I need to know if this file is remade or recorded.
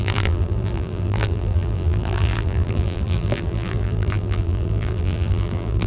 remade